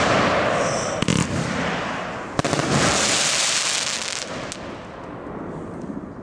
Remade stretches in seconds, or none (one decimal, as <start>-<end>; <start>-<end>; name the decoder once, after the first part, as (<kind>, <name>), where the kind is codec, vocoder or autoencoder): none